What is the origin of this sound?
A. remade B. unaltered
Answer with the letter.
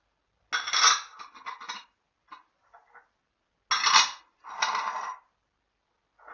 B